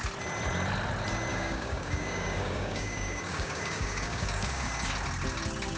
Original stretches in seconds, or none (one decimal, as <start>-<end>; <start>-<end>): 0.0-1.3; 4.7-5.8